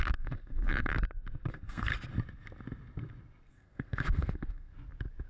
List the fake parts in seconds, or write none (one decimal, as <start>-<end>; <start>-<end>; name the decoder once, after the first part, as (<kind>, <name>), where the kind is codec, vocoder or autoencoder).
0.0-0.9 (codec, SNAC); 1.5-1.9; 3.5-4.7